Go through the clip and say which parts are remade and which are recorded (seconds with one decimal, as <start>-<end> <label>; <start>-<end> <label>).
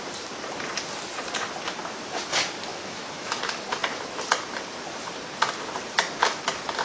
0.0-2.7 recorded; 2.7-3.4 remade; 3.4-6.8 recorded